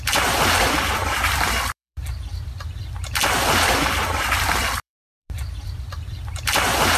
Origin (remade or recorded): remade